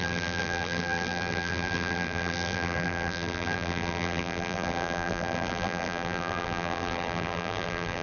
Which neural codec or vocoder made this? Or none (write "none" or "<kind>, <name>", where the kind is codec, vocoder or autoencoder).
vocoder, BigVGAN v2